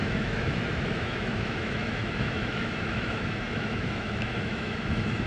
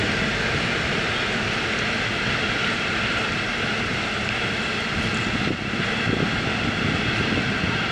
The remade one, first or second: first